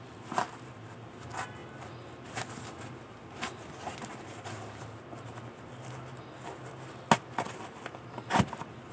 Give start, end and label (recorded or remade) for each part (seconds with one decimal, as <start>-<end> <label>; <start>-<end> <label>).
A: 0.0-8.9 recorded